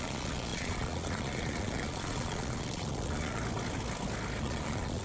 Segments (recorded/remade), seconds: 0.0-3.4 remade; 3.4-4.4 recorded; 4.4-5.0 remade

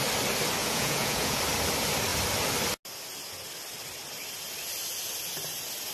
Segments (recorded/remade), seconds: 0.0-0.6 recorded; 0.6-1.4 remade; 1.4-5.9 recorded

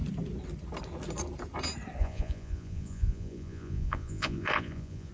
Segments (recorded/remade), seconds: 0.0-2.0 recorded; 2.0-5.1 remade

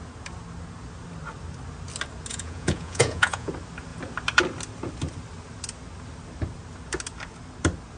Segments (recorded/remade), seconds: 0.0-2.3 recorded; 2.3-3.5 remade; 3.5-8.0 recorded

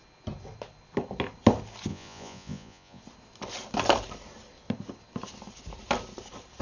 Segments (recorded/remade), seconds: 0.0-1.9 recorded; 1.9-3.0 remade; 3.0-6.6 recorded

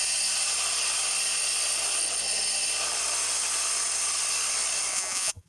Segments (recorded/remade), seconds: 0.0-4.9 recorded; 4.9-5.5 remade

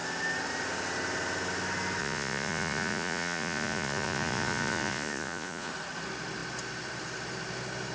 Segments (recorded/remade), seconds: 0.0-2.0 recorded; 2.0-5.7 remade; 5.7-7.9 recorded